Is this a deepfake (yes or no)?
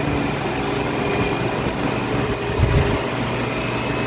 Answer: no